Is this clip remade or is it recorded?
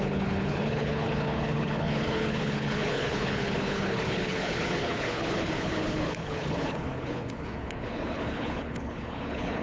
remade